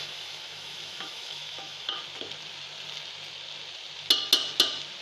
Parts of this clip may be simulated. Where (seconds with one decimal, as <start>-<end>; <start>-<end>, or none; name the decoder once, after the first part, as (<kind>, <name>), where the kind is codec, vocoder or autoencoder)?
0.0-2.0 (autoencoder, DAC-VAE)